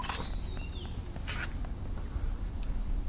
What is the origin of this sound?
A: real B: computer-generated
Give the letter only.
A